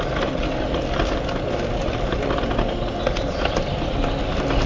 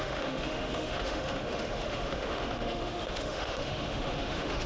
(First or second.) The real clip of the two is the first